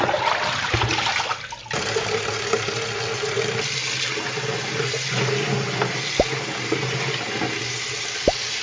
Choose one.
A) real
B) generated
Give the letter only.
A